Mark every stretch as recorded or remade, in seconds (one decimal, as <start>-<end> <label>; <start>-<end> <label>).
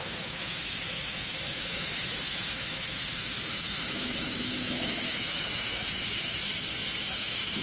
0.0-6.5 remade; 6.5-7.1 recorded; 7.1-7.6 remade